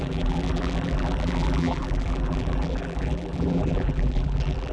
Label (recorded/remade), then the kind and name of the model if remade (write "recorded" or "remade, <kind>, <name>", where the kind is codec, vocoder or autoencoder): remade, vocoder, BigVGAN v2